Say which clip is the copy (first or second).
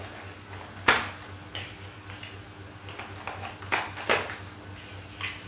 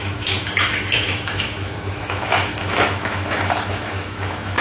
second